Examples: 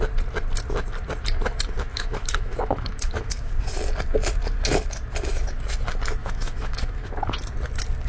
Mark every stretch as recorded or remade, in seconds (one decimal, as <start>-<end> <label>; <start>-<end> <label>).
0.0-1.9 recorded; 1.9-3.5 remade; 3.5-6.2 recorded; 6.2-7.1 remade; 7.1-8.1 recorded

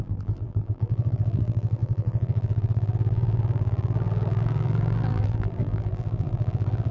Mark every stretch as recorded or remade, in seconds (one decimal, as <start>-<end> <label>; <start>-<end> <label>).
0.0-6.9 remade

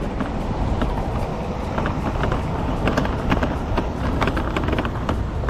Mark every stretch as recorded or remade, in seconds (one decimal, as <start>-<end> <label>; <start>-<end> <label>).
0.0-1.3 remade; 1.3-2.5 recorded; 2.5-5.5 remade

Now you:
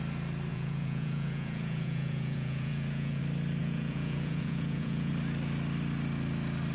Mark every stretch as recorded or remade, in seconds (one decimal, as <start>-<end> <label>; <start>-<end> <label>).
0.0-0.5 recorded; 0.5-3.2 remade; 3.2-3.6 recorded; 3.6-5.1 remade; 5.1-6.7 recorded